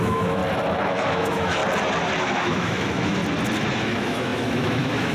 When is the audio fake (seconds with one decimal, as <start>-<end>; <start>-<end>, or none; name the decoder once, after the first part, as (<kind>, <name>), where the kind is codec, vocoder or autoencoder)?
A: 0.0-0.4 (autoencoder, DAC-VAE); 0.9-1.6; 2.2-3.2; 3.7-5.1